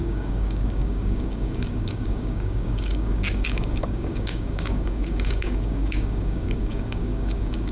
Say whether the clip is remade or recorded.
remade